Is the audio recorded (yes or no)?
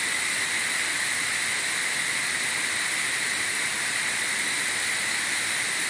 yes